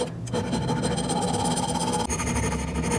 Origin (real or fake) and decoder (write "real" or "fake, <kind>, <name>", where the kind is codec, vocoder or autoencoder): real